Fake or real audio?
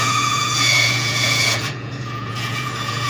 fake